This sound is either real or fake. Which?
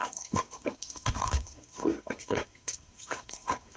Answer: fake